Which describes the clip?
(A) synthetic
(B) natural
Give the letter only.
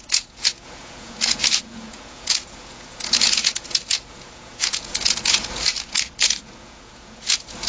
A